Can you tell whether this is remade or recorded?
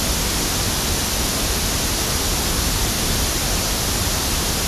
recorded